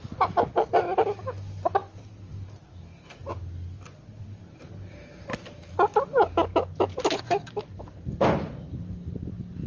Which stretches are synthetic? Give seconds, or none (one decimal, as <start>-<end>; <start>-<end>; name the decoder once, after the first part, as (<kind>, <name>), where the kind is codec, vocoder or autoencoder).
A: none